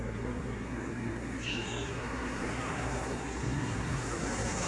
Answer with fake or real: fake